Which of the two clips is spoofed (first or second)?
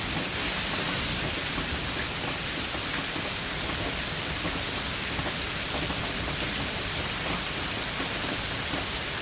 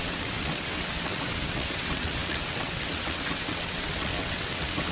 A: second